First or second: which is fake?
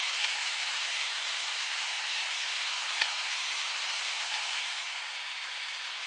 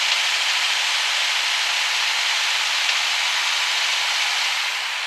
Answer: first